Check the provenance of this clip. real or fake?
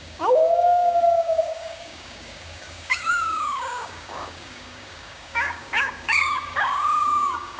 fake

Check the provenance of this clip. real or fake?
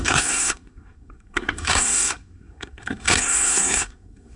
fake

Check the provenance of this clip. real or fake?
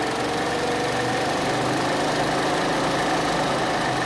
real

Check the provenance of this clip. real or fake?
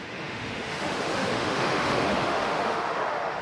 fake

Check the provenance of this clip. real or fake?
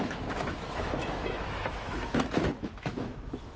fake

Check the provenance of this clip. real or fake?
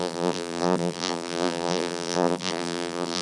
fake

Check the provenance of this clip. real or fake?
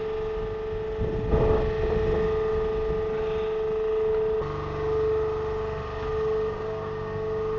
real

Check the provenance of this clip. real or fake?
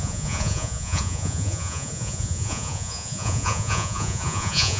fake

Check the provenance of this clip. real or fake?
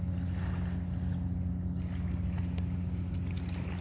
real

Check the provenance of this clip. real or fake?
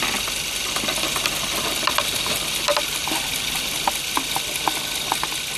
real